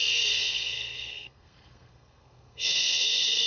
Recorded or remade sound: remade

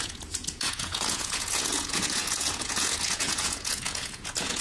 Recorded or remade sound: remade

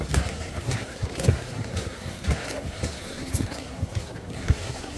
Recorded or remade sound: remade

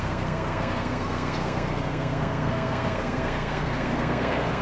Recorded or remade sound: remade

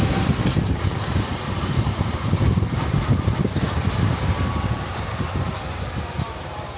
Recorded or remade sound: remade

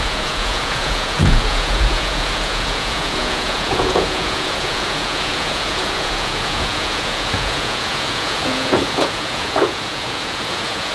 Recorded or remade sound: remade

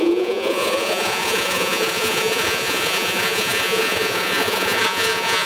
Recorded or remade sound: remade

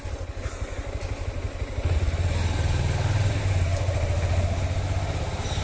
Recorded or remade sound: recorded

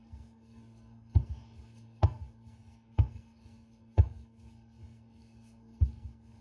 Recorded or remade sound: remade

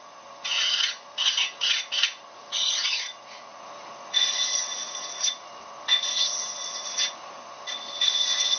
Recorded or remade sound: remade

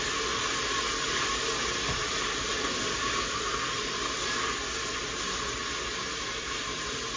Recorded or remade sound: recorded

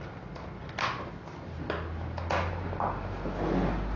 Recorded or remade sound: recorded